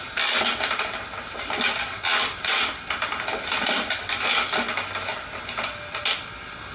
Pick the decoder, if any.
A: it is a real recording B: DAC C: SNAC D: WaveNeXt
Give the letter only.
A